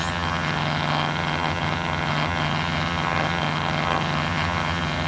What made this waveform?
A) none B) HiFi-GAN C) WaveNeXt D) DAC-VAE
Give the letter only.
B